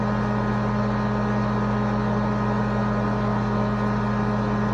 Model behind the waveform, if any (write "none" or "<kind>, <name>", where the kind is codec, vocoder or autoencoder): none